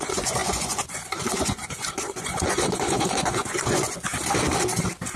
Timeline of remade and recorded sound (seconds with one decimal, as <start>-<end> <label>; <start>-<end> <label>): 0.0-4.1 remade; 4.1-5.2 recorded